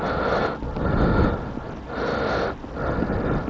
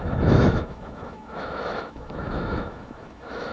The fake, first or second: second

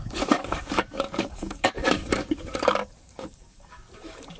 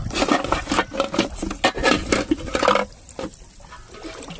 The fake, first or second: first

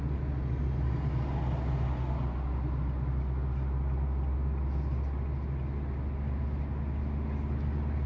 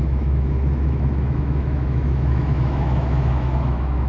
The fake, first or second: second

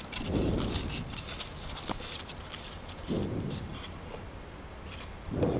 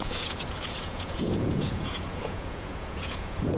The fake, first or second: second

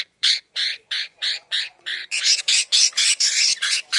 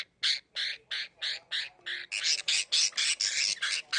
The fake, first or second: first